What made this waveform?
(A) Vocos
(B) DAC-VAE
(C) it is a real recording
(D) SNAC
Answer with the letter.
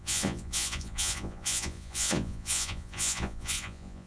A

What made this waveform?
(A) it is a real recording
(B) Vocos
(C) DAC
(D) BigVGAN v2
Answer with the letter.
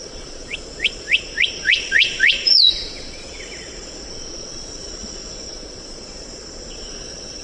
B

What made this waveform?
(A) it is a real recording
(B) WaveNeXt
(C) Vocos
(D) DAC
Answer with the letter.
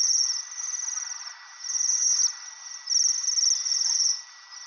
A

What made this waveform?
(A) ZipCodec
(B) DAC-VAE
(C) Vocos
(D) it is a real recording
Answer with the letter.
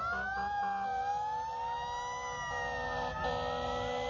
D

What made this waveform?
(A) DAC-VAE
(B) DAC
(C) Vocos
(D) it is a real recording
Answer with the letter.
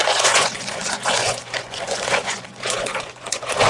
C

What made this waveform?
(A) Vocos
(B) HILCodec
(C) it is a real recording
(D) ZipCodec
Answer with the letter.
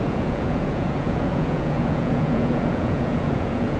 A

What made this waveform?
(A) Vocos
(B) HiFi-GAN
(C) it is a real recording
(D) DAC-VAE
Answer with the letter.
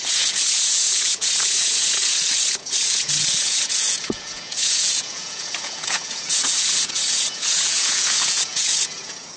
A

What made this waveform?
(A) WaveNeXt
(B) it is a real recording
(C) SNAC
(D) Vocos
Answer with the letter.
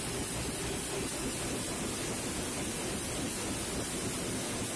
B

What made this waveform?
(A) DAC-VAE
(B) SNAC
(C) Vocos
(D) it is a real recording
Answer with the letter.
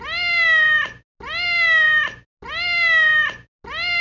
D